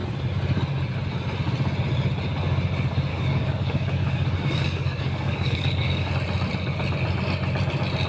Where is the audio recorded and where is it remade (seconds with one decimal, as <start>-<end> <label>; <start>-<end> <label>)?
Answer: 0.0-3.1 recorded; 3.1-6.1 remade; 6.1-8.1 recorded